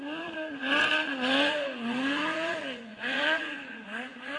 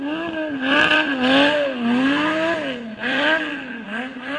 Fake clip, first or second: first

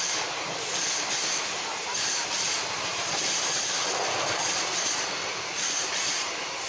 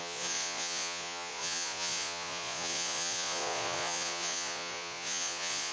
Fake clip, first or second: second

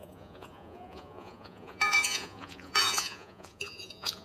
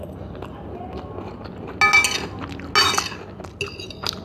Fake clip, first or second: first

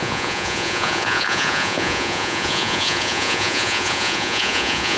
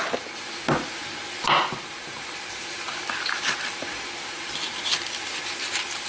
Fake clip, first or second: first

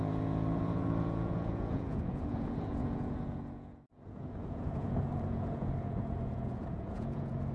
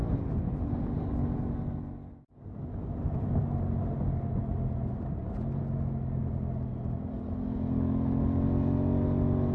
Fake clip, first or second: first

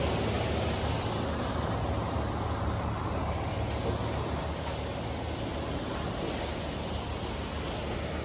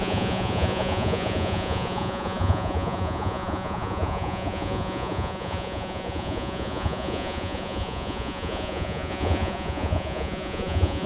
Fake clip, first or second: second